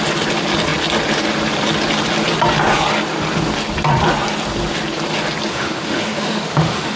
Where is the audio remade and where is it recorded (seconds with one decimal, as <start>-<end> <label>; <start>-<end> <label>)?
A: 0.0-5.5 recorded; 5.5-7.0 remade